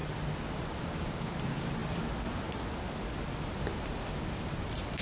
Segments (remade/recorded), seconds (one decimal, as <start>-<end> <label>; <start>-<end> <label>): 0.0-5.0 recorded